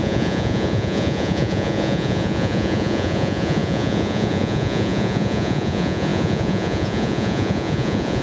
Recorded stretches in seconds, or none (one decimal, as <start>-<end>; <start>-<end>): none

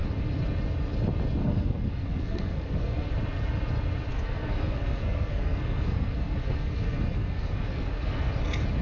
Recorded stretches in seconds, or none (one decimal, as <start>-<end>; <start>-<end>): 0.0-1.4; 3.1-4.1; 8.3-8.8